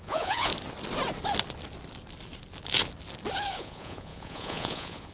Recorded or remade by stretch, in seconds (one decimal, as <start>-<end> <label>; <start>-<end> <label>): 0.0-0.5 remade; 0.5-3.5 recorded; 3.5-5.1 remade